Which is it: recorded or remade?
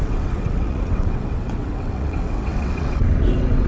remade